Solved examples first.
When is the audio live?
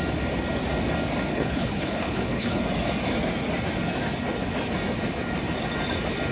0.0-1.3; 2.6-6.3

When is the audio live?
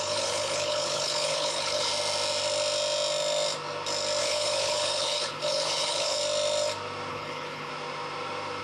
1.9-4.2; 6.2-7.1; 7.7-8.6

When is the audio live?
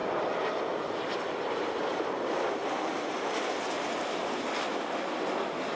0.0-5.8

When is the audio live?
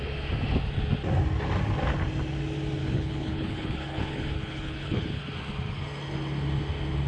0.0-2.8; 5.2-7.1